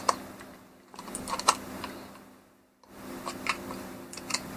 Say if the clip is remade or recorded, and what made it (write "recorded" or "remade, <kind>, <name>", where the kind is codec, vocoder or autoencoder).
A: recorded